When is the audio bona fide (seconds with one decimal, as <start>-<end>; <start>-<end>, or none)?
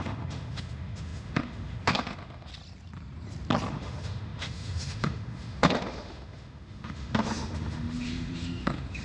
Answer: 2.5-3.7